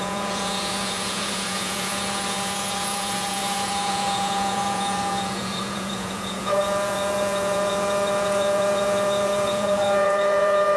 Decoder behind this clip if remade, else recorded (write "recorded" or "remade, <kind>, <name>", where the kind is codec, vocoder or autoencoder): remade, vocoder, Vocos